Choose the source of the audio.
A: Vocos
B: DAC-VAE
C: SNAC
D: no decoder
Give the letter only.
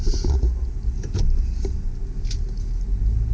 D